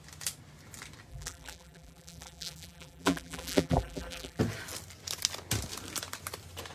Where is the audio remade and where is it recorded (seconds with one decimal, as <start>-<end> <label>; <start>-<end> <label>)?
0.0-1.1 recorded; 1.1-4.4 remade; 4.4-6.7 recorded